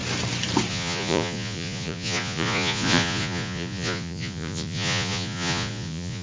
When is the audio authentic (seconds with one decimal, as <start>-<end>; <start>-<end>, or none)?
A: 0.0-0.7